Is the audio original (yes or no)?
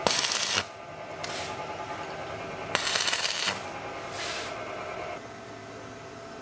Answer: yes